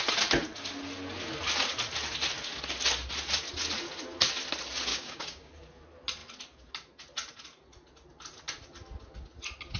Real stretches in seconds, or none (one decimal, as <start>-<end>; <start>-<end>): 0.0-4.9; 5.5-9.8